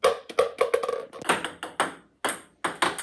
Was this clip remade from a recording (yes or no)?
no